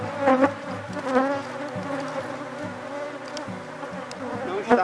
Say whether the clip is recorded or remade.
recorded